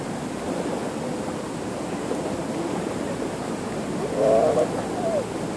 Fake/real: real